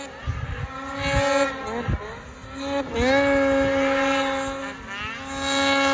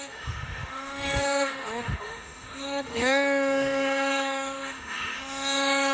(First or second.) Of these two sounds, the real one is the first